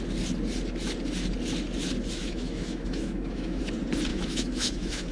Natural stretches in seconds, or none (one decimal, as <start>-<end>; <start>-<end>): 0.0-2.2; 3.6-4.1

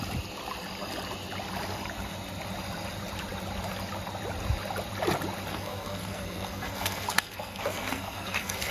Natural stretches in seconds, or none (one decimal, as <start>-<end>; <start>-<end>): 0.0-5.5